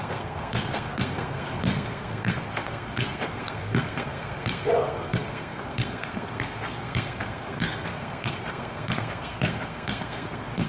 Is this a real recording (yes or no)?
no